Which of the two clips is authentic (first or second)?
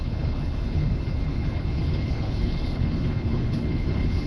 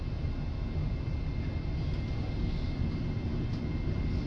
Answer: second